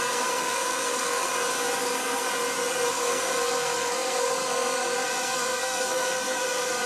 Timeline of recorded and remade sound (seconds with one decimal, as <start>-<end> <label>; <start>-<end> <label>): 0.0-1.3 remade; 1.3-1.8 recorded; 1.8-2.3 remade; 2.3-2.9 recorded; 2.9-6.9 remade